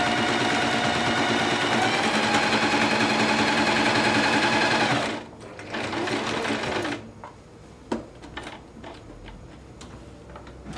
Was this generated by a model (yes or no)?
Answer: no